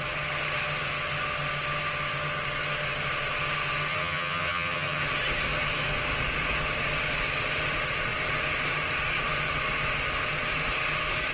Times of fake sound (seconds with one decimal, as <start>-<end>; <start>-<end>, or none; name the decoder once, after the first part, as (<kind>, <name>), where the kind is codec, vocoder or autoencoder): 3.9-5.0 (vocoder, HiFi-GAN)